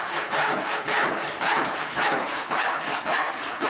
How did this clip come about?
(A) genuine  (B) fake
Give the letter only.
B